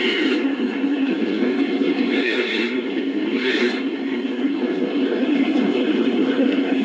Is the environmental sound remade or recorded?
remade